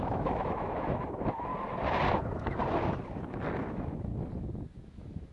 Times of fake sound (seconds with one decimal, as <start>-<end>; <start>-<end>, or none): 0.0-1.5; 2.1-2.6; 3.6-4.1; 4.7-5.3